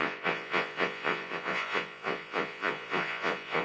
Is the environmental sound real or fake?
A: fake